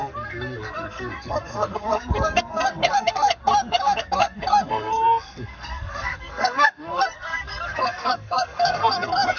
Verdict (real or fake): fake